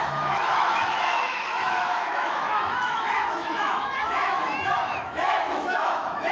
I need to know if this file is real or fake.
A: fake